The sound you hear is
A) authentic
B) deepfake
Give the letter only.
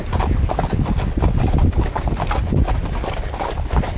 A